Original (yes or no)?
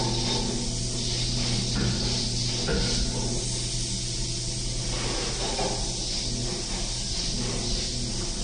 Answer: yes